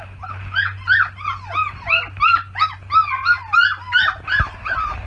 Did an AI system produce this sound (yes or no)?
no